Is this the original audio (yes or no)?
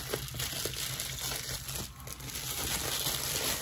yes